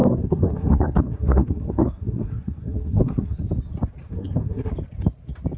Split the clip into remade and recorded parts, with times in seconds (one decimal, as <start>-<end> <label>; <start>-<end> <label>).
0.0-3.4 remade; 3.4-4.1 recorded; 4.1-4.7 remade; 4.7-5.6 recorded